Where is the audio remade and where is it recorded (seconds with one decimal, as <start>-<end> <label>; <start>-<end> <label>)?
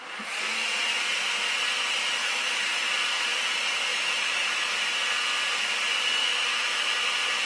0.0-2.2 recorded; 2.2-2.9 remade; 2.9-3.9 recorded; 3.9-4.7 remade; 4.7-6.2 recorded; 6.2-6.9 remade; 6.9-7.5 recorded